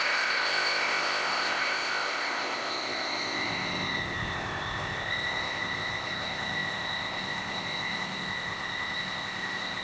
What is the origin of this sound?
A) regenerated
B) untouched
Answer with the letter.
A